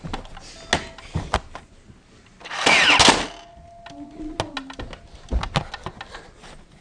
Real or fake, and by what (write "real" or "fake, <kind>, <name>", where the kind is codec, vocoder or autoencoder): real